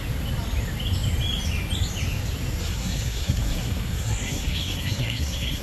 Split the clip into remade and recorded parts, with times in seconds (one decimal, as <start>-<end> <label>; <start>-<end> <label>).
0.0-2.6 recorded; 2.6-5.6 remade